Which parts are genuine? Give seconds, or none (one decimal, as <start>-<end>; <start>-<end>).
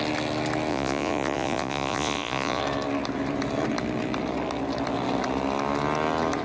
0.0-0.7; 2.6-6.4